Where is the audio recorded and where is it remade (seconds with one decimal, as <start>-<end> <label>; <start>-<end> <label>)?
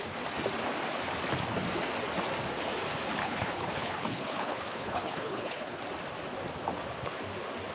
0.0-3.2 recorded; 3.2-5.8 remade; 5.8-7.7 recorded